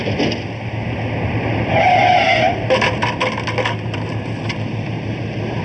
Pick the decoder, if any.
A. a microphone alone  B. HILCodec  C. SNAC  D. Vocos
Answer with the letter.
A